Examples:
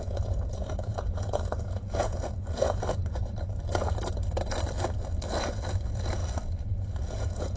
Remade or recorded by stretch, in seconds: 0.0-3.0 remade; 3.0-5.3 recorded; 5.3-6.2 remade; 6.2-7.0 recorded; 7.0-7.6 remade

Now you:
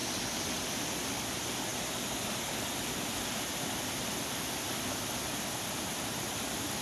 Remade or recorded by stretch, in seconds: 0.0-6.8 recorded

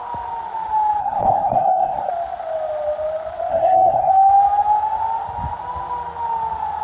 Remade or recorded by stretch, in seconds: 0.0-1.0 recorded; 1.0-2.1 remade; 2.1-3.5 recorded; 3.5-4.1 remade; 4.1-6.8 recorded

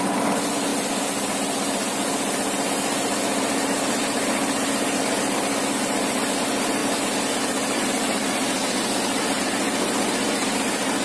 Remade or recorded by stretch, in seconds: 0.0-11.0 recorded

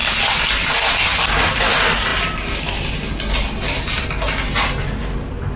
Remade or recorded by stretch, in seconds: 0.0-5.6 recorded